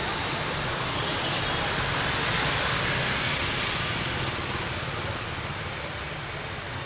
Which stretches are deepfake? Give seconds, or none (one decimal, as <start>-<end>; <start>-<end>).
0.7-1.4